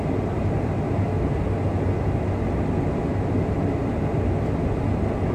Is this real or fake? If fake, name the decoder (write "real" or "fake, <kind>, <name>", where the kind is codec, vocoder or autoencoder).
real